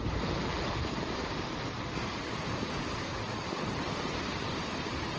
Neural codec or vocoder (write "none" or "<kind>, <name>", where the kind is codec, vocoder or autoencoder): none